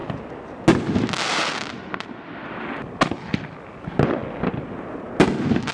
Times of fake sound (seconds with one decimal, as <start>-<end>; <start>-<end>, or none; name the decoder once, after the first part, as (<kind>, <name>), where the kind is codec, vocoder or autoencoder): none